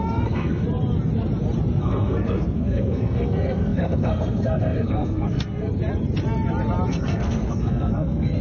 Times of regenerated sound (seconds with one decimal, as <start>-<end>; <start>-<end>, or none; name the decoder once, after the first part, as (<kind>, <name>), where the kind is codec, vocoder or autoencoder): 0.0-0.6 (codec, SNAC); 1.8-5.7; 6.9-8.4